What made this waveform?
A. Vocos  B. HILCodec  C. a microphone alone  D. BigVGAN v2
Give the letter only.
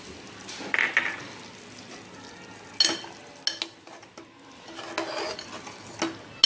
C